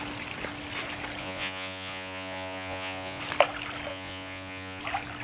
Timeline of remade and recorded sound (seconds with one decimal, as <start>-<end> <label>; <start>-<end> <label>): 0.0-1.2 recorded; 1.2-3.2 remade; 3.2-3.9 recorded; 3.9-4.8 remade; 4.8-5.2 recorded

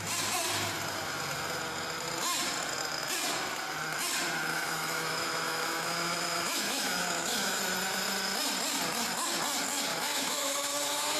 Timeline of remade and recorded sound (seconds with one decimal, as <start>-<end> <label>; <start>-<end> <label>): 0.0-4.5 recorded; 4.5-7.6 remade; 7.6-9.9 recorded; 9.9-11.2 remade

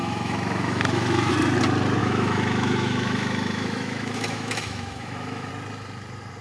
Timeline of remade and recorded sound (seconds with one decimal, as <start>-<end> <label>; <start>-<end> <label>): 0.0-1.3 remade; 1.3-2.0 recorded; 2.0-5.5 remade; 5.5-6.4 recorded

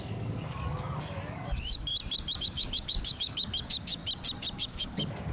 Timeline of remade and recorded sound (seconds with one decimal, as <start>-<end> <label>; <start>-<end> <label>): 0.0-1.9 remade; 1.9-2.4 recorded; 2.4-4.0 remade; 4.0-4.5 recorded; 4.5-5.3 remade

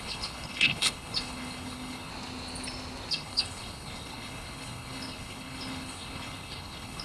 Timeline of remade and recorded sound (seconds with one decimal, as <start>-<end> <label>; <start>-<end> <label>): 0.0-2.1 remade; 2.1-3.1 recorded; 3.1-7.0 remade